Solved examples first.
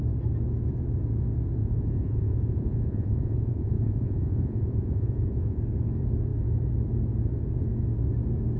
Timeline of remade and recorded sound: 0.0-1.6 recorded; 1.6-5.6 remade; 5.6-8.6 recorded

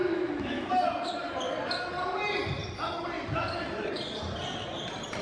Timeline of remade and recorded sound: 0.0-0.7 remade; 0.7-5.2 recorded

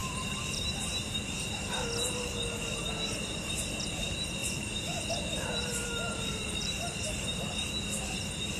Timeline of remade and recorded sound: 0.0-1.5 remade; 1.5-4.4 recorded; 4.4-5.1 remade; 5.1-5.7 recorded; 5.7-7.4 remade; 7.4-8.6 recorded

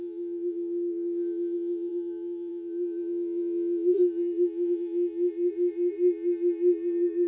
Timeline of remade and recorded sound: 0.0-7.3 remade